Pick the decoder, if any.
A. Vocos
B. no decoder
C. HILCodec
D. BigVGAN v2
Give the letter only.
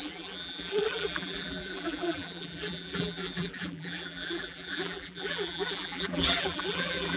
D